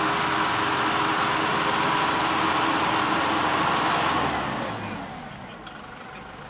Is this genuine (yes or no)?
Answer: yes